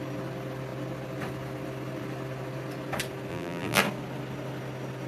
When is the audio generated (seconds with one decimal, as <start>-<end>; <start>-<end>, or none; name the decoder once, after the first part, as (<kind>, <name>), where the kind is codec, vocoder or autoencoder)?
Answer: 3.3-3.8 (vocoder, BigVGAN v2)